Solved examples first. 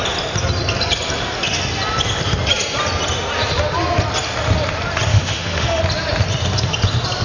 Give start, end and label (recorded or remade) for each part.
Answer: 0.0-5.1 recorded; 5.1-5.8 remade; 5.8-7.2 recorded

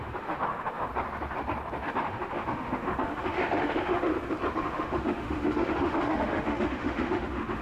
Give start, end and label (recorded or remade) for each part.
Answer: 0.0-0.9 remade; 0.9-1.9 recorded; 1.9-4.1 remade; 4.1-4.6 recorded; 4.6-7.6 remade

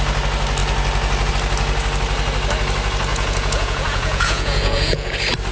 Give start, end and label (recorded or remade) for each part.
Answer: 0.0-3.1 recorded; 3.1-5.1 remade; 5.1-5.5 recorded

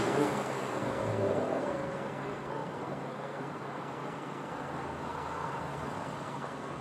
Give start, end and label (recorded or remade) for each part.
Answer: 0.0-6.8 remade

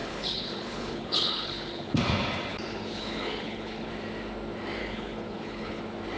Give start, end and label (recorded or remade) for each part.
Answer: 0.0-1.9 remade; 1.9-2.5 recorded; 2.5-3.9 remade; 3.9-4.8 recorded; 4.8-5.8 remade; 5.8-6.2 recorded

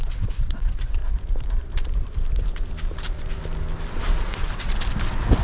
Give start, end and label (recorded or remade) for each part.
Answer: 0.0-1.0 remade; 1.0-4.2 recorded; 4.2-4.7 remade; 4.7-5.4 recorded

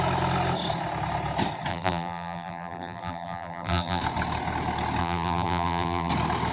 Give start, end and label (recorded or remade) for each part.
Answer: 0.0-1.7 recorded; 1.7-4.0 remade; 4.0-5.0 recorded; 5.0-6.1 remade; 6.1-6.5 recorded

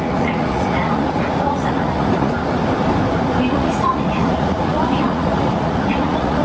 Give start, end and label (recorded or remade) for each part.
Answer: 0.0-2.3 remade; 2.3-3.5 recorded; 3.5-6.4 remade